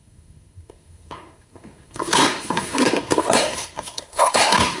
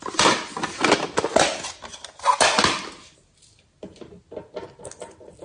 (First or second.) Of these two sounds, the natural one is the second